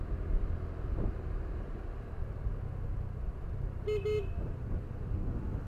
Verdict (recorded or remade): recorded